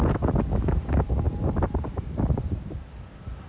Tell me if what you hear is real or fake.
real